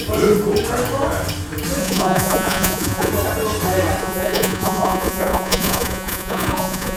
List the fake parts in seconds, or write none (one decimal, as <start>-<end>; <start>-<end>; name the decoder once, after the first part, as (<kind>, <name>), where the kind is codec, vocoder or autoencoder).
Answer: 1.8-3.1 (vocoder, Vocos); 4.0-7.0